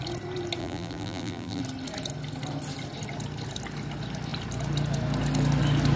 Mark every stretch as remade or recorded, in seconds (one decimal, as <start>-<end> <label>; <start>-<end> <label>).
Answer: 0.0-0.6 recorded; 0.6-1.6 remade; 1.6-6.0 recorded